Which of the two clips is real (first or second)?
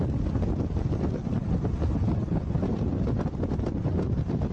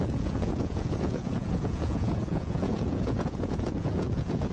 first